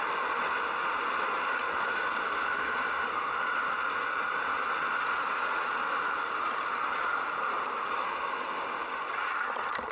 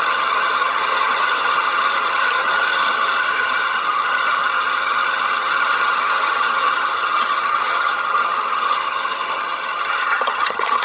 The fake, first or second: second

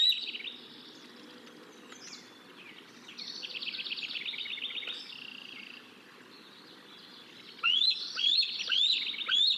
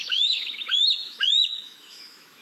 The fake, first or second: second